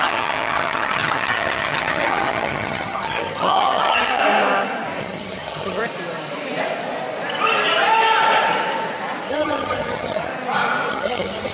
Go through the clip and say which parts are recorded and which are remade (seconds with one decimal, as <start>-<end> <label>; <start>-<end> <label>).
0.0-4.2 remade; 4.2-5.0 recorded; 5.0-5.8 remade; 5.8-9.3 recorded; 9.3-10.3 remade; 10.3-10.9 recorded; 10.9-11.5 remade